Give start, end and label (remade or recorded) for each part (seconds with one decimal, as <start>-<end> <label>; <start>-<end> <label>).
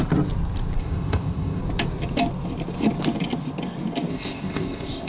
0.0-0.8 recorded; 0.8-1.6 remade; 1.6-4.1 recorded; 4.1-5.1 remade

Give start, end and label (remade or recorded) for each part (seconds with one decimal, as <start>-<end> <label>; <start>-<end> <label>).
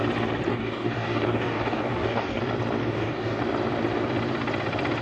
0.0-0.5 recorded; 0.5-2.4 remade; 2.4-2.8 recorded; 2.8-3.4 remade; 3.4-5.0 recorded